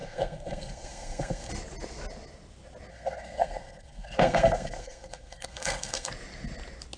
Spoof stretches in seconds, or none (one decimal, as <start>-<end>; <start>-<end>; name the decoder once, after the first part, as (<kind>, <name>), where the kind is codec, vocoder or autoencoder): 0.0-1.5 (codec, SNAC); 2.9-6.1